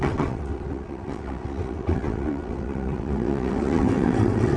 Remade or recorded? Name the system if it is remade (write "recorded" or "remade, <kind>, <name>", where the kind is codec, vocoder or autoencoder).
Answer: remade, vocoder, WaveNeXt